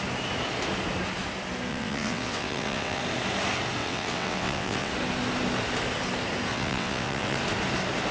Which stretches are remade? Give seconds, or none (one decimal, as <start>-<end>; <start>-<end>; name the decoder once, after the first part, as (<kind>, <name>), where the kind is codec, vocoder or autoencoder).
1.7-3.0 (vocoder, WaveNeXt); 3.8-4.9; 6.5-7.4